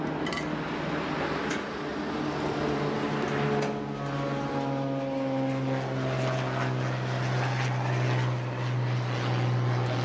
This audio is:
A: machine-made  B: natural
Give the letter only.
B